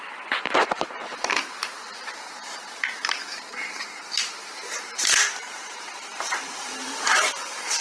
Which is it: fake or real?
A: fake